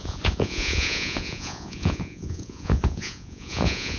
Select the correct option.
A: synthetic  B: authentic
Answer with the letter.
A